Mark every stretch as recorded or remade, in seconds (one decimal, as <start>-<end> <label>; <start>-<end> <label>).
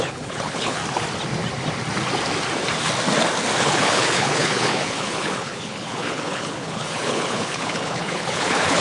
0.0-0.8 remade; 0.8-3.6 recorded; 3.6-8.8 remade